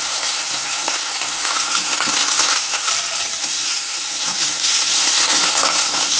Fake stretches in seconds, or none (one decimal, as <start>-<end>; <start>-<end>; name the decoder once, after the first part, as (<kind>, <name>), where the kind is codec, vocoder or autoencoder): 0.0-2.9 (codec, SNAC); 3.4-6.2